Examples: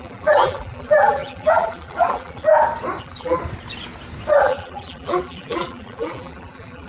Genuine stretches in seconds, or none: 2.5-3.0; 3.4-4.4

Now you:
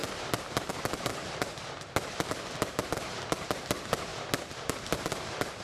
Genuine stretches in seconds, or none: 0.0-1.2; 1.9-5.6